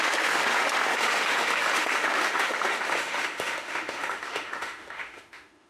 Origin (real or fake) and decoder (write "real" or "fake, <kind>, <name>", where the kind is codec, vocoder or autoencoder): fake, autoencoder, DAC-VAE